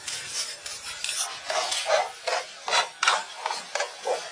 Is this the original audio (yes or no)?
yes